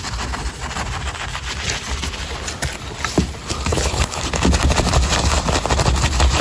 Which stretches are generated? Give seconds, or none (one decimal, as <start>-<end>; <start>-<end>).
3.7-4.2